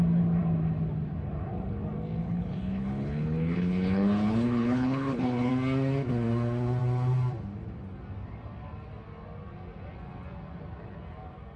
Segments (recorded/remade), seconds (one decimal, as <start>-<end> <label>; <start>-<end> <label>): 0.0-2.2 recorded; 2.2-5.5 remade; 5.5-11.6 recorded